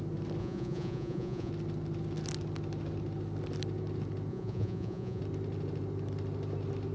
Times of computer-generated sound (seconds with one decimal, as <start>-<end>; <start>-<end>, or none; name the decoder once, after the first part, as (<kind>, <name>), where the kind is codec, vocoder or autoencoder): 0.4-1.5 (vocoder, Vocos); 4.3-5.2